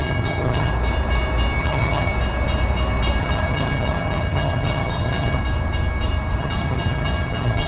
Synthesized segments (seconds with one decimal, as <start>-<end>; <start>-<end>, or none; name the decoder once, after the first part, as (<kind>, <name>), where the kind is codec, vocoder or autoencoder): 0.0-0.7 (vocoder, HiFi-GAN); 1.6-2.1; 3.2-5.4; 6.4-7.7